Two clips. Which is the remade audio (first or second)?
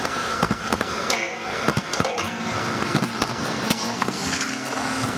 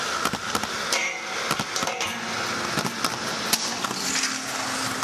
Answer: first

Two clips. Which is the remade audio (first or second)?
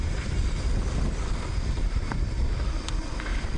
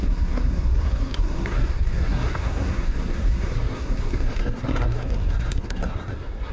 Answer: second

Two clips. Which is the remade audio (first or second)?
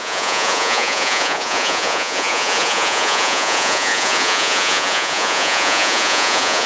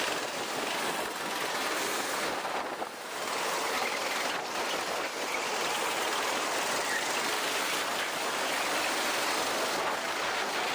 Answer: first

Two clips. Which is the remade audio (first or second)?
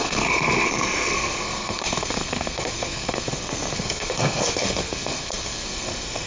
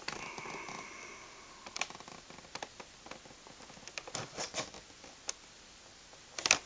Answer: first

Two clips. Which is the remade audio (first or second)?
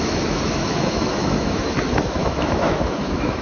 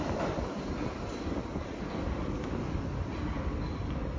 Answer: first